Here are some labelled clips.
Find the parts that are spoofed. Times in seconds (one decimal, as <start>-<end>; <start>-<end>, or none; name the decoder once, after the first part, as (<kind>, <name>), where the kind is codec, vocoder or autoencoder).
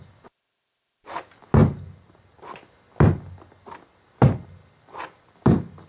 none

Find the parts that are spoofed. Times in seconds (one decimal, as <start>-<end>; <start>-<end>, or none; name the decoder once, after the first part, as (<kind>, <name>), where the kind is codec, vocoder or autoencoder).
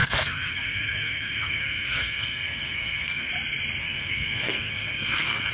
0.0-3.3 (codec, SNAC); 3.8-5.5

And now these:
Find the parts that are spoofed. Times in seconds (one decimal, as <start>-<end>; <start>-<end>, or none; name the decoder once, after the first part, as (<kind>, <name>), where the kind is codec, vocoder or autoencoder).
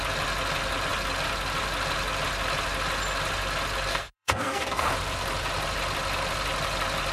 3.9-4.9 (codec, SNAC)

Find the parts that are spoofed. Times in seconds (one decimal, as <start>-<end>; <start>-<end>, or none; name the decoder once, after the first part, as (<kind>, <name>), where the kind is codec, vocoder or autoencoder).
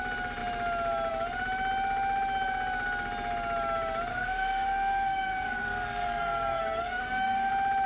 4.1-7.5 (codec, SNAC)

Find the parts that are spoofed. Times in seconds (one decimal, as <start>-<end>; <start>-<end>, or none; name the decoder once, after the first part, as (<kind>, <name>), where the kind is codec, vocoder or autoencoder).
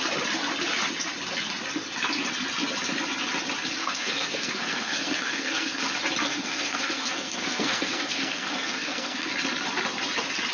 3.8-5.8 (codec, SNAC); 6.2-9.3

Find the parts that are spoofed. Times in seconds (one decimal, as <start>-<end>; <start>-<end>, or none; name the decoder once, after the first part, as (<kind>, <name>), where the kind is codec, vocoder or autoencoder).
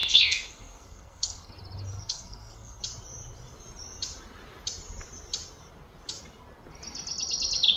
0.0-1.5 (codec, SNAC); 1.9-2.8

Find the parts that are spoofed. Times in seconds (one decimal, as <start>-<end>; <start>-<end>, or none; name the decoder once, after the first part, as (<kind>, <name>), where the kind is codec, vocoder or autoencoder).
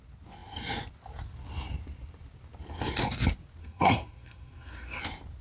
3.6-5.0 (codec, SNAC)